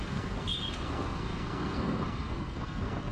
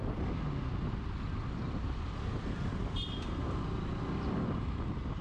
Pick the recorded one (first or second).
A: second